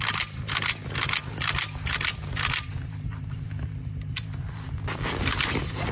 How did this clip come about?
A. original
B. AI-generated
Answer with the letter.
A